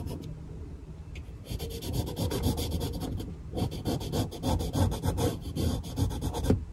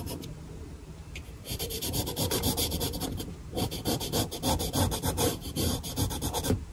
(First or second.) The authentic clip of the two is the first